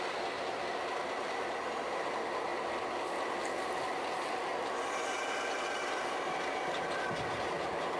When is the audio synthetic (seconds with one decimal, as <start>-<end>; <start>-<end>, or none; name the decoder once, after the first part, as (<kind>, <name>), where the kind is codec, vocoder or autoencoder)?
none